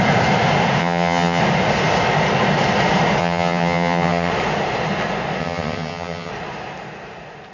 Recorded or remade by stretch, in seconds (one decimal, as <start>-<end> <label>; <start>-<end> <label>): 0.0-0.8 recorded; 0.8-1.4 remade; 1.4-3.2 recorded; 3.2-4.3 remade; 4.3-5.4 recorded; 5.4-6.3 remade; 6.3-7.5 recorded